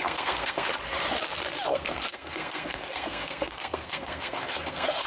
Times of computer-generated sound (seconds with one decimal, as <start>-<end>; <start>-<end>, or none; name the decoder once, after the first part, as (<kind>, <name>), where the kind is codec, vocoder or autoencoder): 0.0-0.7 (codec, SNAC); 1.7-5.1